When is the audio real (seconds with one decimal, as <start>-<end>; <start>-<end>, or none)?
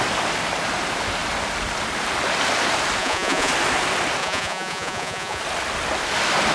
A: 0.0-3.0; 3.5-4.2; 5.4-6.5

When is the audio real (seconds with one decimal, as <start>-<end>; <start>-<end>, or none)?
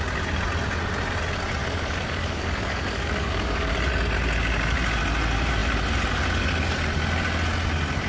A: 0.0-1.6; 3.7-8.1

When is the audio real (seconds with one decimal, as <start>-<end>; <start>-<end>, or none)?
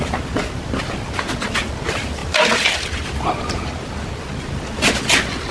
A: 0.0-5.5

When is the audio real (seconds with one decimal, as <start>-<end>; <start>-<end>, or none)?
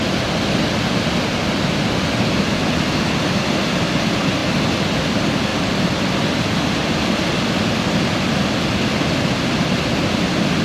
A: 0.0-10.6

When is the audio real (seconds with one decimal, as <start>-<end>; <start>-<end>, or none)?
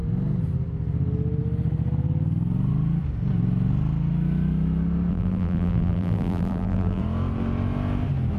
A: 0.0-5.1; 7.0-8.4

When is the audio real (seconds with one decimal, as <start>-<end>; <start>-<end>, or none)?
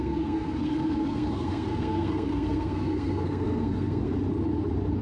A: 4.1-5.0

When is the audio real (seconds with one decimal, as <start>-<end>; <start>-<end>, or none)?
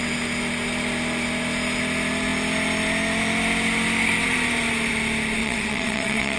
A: 0.0-5.4